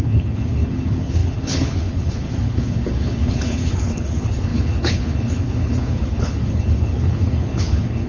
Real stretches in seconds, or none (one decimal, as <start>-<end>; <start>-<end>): none